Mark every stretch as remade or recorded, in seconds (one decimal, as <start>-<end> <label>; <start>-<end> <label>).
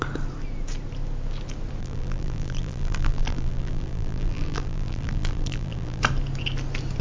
0.0-1.8 recorded; 1.8-6.0 remade; 6.0-7.0 recorded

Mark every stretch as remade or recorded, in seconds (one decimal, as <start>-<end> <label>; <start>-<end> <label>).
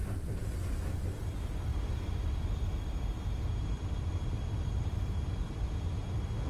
0.0-1.7 recorded; 1.7-5.6 remade; 5.6-6.5 recorded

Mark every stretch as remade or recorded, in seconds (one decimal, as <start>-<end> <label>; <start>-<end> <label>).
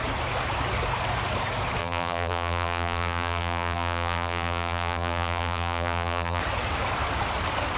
0.0-1.8 recorded; 1.8-6.4 remade; 6.4-7.8 recorded